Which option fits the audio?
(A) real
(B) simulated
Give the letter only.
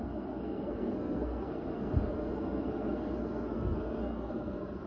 B